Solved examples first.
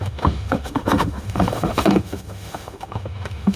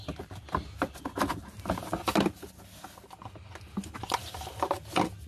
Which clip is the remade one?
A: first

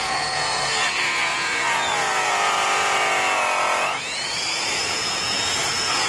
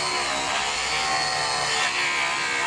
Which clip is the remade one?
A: first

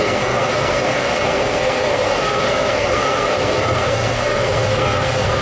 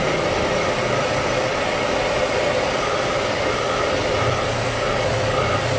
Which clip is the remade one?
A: first